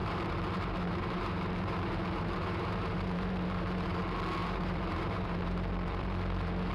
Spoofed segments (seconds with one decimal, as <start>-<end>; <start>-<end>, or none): 0.0-4.0; 4.4-6.7